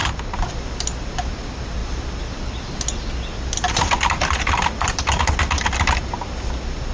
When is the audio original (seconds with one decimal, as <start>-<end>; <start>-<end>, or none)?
0.0-6.9